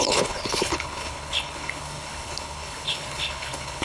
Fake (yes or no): yes